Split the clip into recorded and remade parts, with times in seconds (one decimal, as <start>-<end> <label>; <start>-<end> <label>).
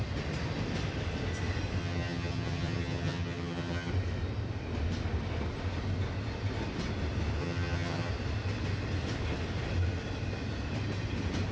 0.0-1.8 recorded; 1.8-3.9 remade; 3.9-7.4 recorded; 7.4-8.1 remade; 8.1-11.5 recorded